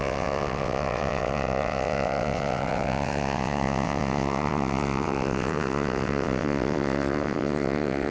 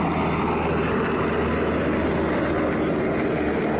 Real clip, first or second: second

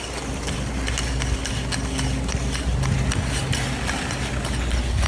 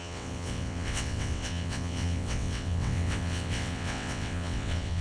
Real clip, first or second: first